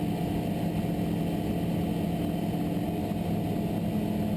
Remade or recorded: recorded